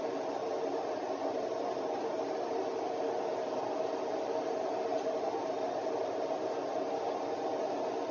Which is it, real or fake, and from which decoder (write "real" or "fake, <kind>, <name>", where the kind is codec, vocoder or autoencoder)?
real